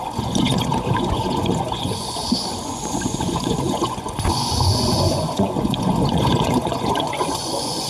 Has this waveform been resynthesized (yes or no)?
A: yes